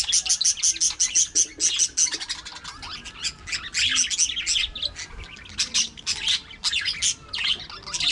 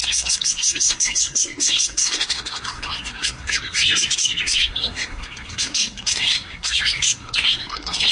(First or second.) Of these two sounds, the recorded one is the first